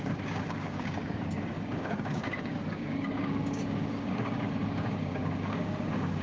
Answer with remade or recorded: remade